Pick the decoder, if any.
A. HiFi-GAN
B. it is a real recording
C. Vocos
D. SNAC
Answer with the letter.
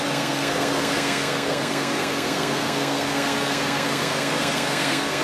D